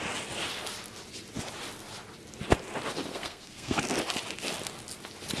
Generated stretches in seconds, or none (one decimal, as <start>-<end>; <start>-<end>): 3.1-3.8